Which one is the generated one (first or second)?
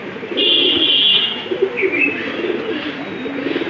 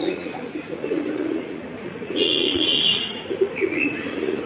second